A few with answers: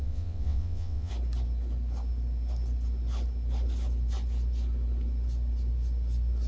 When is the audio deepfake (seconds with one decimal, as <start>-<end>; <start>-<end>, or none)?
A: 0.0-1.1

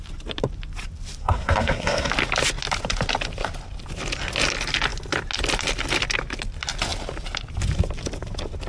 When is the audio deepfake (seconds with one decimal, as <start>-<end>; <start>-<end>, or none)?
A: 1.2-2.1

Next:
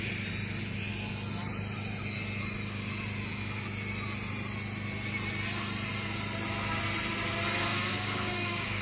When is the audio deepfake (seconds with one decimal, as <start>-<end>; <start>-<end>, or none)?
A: 7.7-8.8

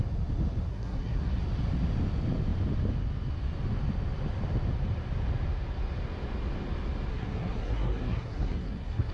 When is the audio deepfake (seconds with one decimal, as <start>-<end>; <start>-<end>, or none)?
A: 0.7-1.4; 7.1-9.1